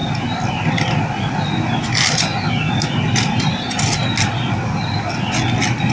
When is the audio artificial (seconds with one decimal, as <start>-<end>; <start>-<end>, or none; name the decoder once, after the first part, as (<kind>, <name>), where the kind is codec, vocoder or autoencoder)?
none